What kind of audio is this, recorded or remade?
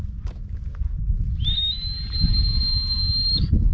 recorded